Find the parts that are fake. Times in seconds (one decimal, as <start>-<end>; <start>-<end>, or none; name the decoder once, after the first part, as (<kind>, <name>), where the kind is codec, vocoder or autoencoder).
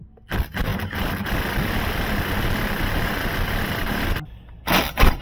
none